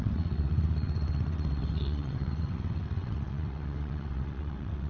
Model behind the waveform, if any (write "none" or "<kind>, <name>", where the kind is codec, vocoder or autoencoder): vocoder, WaveNeXt